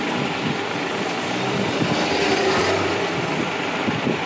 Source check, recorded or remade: remade